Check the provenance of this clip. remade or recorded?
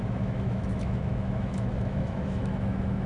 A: remade